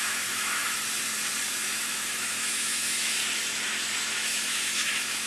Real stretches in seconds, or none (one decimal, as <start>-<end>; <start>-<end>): 0.6-1.5; 3.2-4.1